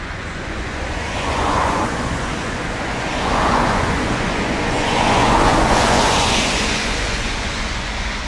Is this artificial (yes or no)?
yes